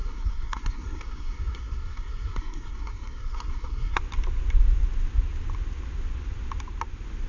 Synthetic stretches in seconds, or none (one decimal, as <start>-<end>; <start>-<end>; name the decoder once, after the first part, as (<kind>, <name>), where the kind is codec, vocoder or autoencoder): 0.0-4.0 (codec, SNAC)

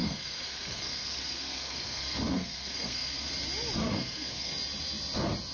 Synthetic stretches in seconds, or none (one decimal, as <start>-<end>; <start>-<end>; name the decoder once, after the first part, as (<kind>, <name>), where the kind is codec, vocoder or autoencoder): 0.0-3.3 (codec, SNAC); 3.8-4.5

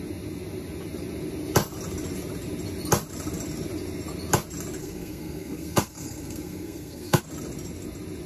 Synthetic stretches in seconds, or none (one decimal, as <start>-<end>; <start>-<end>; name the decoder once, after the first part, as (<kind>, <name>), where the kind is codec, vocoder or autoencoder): 4.8-7.2 (codec, SNAC)

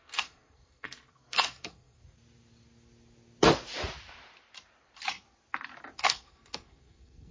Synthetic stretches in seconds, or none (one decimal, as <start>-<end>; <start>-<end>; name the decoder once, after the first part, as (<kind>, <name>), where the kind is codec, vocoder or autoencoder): 0.0-2.0 (codec, SNAC); 6.0-7.3

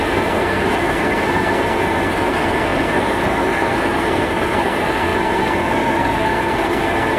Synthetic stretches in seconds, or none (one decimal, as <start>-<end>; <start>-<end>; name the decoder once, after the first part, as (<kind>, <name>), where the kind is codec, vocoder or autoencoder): 0.0-7.2 (codec, SNAC)

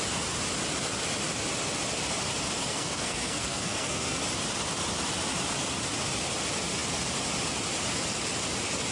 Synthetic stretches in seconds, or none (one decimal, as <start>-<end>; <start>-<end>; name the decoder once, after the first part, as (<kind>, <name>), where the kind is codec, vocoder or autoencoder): 2.7-4.2 (codec, SNAC)

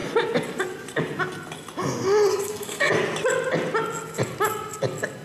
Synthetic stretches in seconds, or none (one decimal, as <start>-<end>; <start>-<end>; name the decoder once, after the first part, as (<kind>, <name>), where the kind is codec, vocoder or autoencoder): 2.3-2.9 (codec, SNAC)

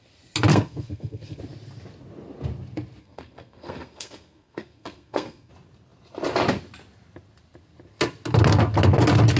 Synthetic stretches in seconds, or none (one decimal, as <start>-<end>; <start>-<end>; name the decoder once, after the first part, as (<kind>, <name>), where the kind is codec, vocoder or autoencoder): 0.5-1.4 (codec, SNAC); 3.0-5.5